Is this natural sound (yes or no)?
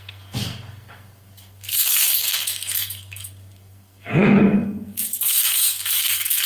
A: no